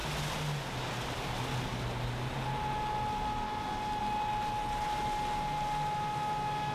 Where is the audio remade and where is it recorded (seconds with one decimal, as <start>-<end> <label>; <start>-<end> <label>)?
0.0-6.7 recorded